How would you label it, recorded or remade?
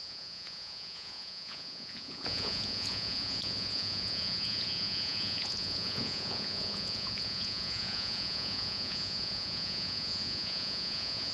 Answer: remade